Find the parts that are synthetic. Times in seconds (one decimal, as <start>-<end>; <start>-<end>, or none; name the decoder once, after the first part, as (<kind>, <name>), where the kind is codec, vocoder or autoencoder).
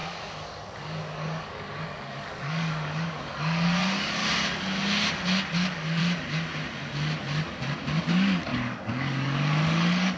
0.0-4.2 (codec, DAC); 5.5-6.0; 8.0-10.2